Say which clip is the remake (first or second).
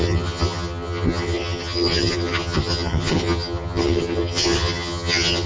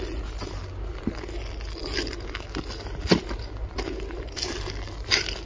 first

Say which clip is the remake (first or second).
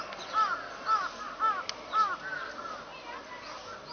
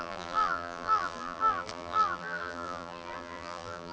second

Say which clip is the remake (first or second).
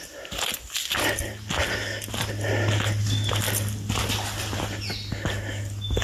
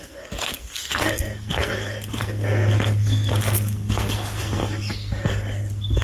second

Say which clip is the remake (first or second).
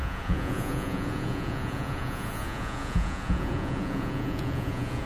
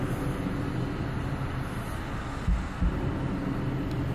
first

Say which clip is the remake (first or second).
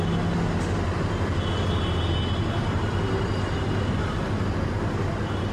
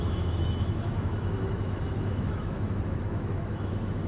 second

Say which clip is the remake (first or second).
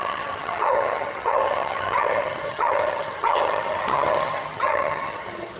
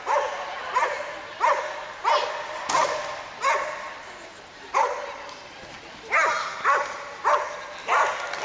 first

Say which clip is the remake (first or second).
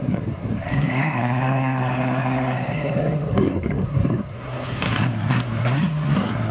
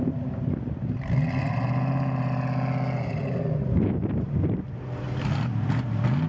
first